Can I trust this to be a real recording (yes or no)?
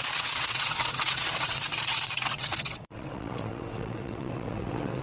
no